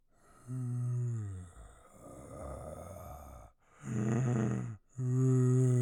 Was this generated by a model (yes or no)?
no